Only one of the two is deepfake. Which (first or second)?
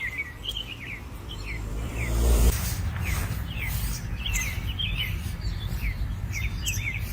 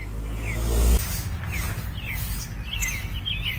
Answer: first